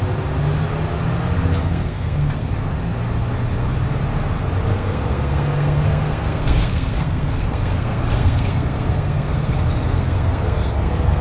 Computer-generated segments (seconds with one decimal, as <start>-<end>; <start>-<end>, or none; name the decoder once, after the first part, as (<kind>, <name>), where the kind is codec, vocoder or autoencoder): 1.6-2.5 (codec, SNAC); 4.7-9.5; 9.9-11.2

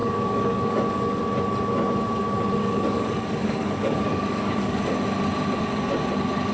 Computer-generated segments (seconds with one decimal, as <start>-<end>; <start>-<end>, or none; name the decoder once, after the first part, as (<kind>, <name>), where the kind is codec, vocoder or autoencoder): 0.0-1.2 (codec, DAC); 2.6-4.8